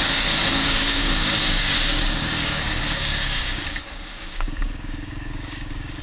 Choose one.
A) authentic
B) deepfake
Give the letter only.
B